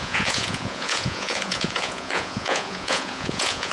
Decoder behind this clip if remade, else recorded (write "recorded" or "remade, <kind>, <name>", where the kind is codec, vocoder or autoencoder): remade, vocoder, Vocos